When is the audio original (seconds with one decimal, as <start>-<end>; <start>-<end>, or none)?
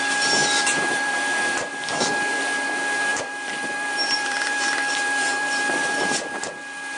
0.0-0.4; 1.7-3.1; 6.4-7.0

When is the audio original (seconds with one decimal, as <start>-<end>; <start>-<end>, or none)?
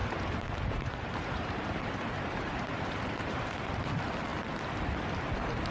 3.4-5.7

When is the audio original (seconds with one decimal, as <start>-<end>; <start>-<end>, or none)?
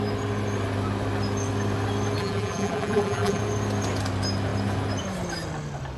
0.0-2.2; 3.4-6.0